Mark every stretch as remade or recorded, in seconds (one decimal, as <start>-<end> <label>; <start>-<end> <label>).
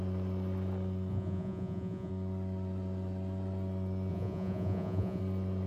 0.0-1.1 recorded; 1.1-2.1 remade; 2.1-4.1 recorded; 4.1-5.2 remade; 5.2-5.7 recorded